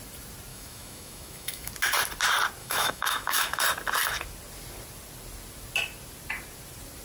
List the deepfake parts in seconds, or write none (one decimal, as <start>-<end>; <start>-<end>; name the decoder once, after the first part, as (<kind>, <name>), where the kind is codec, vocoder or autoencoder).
0.5-1.7 (autoencoder, DAC-VAE); 2.6-3.6

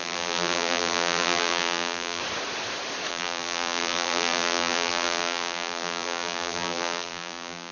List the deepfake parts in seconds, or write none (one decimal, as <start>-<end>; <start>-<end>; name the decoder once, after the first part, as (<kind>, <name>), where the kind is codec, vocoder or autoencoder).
0.0-2.2 (vocoder, BigVGAN v2); 3.1-7.7

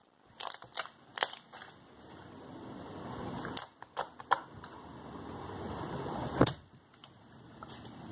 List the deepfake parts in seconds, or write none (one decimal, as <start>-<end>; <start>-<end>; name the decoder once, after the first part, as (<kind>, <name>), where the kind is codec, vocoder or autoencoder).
none

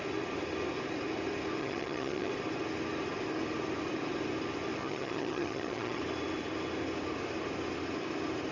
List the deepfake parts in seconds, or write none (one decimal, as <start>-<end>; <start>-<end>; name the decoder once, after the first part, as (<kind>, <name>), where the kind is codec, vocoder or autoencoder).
1.6-2.3 (vocoder, HiFi-GAN); 4.8-6.0